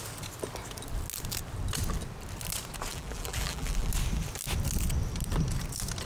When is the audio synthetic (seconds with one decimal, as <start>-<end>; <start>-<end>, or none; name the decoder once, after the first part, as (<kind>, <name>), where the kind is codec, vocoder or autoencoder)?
2.9-3.9 (vocoder, BigVGAN v2)